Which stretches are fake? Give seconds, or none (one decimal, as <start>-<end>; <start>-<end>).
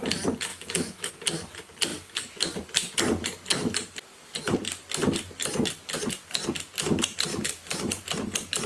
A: 0.5-1.1; 7.3-7.9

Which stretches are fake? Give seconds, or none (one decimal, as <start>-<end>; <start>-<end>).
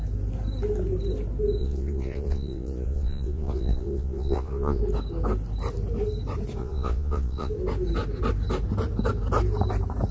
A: 1.6-4.8; 6.6-7.5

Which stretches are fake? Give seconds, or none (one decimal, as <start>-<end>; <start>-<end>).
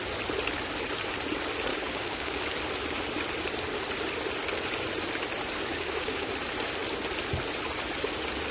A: 1.7-2.4; 5.7-6.3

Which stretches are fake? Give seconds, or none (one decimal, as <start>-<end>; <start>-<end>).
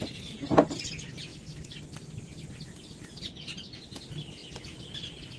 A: 1.3-3.2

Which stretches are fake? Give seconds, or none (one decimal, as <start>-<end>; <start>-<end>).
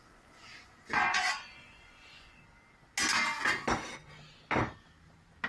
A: 0.0-2.4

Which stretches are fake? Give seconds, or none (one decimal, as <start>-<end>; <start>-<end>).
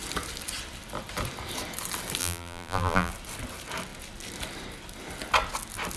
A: 2.2-3.1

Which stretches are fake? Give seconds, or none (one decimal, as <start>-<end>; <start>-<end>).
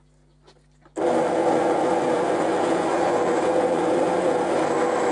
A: 1.4-4.5